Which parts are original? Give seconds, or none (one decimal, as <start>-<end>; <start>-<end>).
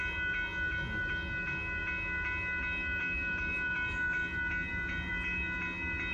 0.0-6.1